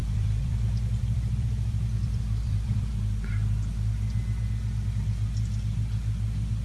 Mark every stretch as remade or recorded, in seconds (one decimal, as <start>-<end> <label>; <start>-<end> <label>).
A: 0.0-2.9 remade; 2.9-6.6 recorded